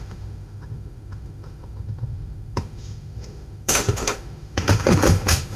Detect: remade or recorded remade